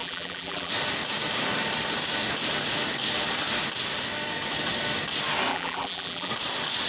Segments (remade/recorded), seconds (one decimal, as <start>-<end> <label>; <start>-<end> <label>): 0.0-0.7 remade; 0.7-5.5 recorded; 5.5-6.3 remade; 6.3-6.9 recorded

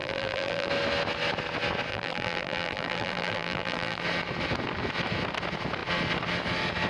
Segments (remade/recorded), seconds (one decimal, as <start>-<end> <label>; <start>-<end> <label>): 0.0-0.7 remade; 0.7-1.9 recorded; 1.9-4.0 remade; 4.0-6.9 recorded

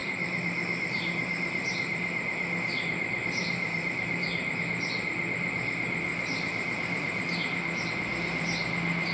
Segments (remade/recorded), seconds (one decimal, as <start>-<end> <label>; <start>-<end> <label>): 0.0-4.6 remade; 4.6-6.1 recorded; 6.1-7.9 remade; 7.9-9.1 recorded

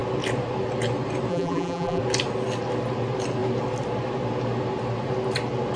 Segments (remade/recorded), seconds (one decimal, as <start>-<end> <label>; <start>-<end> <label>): 0.0-1.3 recorded; 1.3-2.0 remade; 2.0-5.8 recorded

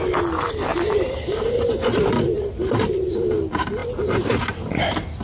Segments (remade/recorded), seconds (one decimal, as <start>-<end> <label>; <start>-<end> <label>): 0.0-0.7 recorded; 0.7-3.4 remade; 3.4-3.8 recorded; 3.8-4.4 remade; 4.4-5.2 recorded

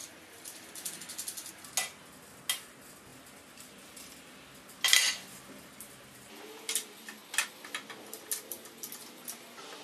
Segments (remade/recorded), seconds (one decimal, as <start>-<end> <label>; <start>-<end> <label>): 0.0-3.1 recorded; 3.1-6.4 remade; 6.4-9.8 recorded